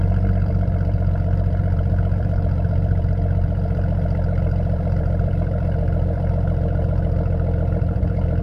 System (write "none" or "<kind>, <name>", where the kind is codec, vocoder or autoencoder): vocoder, BigVGAN v2